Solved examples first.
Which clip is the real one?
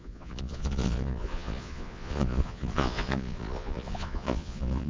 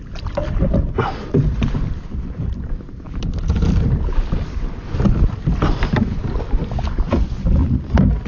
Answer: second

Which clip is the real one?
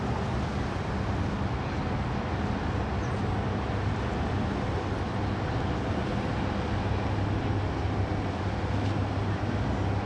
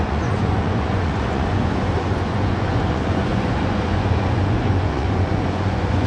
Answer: first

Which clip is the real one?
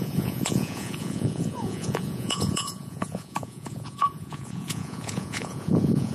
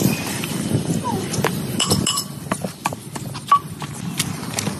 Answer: second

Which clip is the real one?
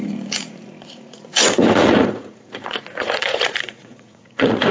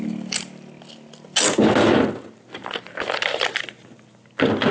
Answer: second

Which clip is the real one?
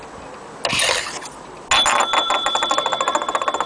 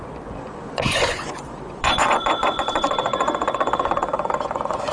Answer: first